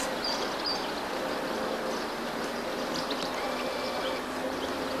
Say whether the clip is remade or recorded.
recorded